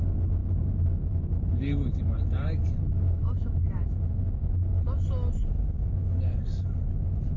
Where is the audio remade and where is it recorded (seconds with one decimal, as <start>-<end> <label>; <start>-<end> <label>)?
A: 0.0-7.4 recorded